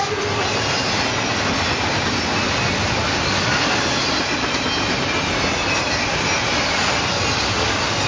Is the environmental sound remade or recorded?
recorded